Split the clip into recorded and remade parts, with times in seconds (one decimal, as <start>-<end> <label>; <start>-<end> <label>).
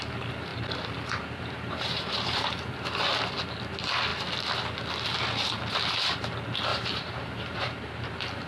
0.0-0.5 recorded; 0.5-2.6 remade; 2.6-6.7 recorded; 6.7-8.1 remade; 8.1-8.5 recorded